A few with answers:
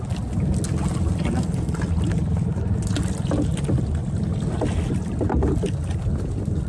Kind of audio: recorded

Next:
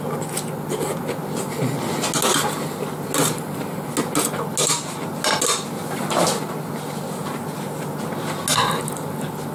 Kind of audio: recorded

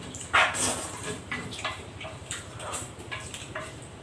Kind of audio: remade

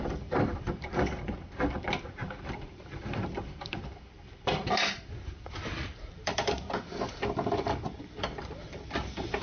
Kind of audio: remade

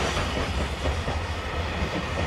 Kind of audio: recorded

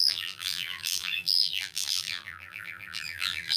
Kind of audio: remade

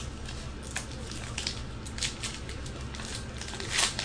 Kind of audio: recorded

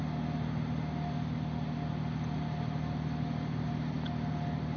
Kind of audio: recorded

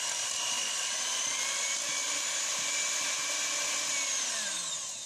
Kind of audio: remade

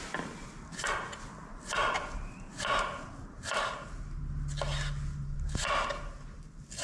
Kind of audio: recorded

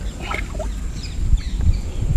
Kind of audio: remade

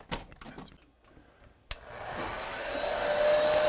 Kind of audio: recorded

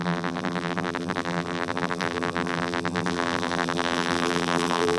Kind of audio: remade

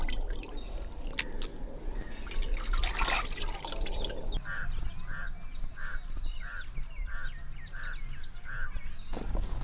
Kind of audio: recorded